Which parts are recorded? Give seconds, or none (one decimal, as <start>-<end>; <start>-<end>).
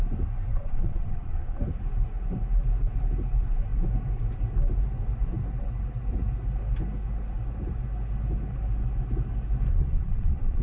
0.0-0.5; 1.6-9.7